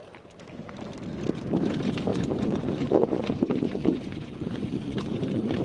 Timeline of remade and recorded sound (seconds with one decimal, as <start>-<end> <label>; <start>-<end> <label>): 0.0-2.1 recorded; 2.1-5.6 remade